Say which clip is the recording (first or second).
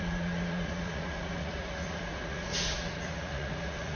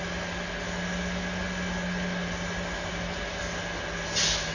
second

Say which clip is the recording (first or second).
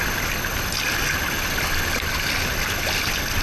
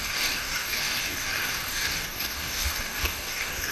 first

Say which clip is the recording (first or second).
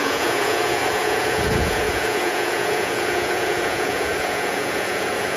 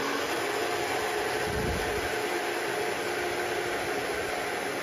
second